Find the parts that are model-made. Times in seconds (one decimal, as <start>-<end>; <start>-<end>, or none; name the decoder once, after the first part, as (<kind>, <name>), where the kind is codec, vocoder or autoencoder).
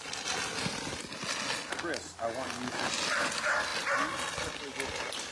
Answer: none